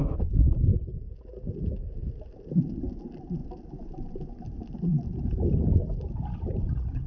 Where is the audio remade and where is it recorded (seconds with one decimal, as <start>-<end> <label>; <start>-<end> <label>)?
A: 0.0-7.1 recorded